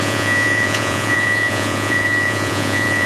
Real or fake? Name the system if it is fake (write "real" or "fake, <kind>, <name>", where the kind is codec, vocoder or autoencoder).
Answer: fake, vocoder, Vocos